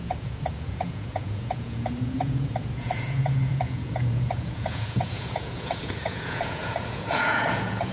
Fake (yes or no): yes